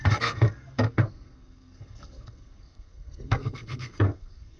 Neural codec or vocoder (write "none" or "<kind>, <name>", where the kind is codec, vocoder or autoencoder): codec, SNAC